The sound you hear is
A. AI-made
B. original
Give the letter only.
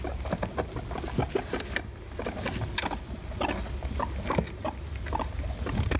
B